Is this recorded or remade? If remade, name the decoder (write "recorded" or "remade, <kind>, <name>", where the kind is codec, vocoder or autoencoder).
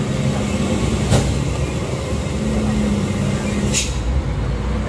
recorded